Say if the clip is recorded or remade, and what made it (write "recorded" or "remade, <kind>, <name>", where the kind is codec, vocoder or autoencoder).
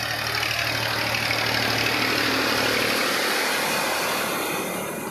recorded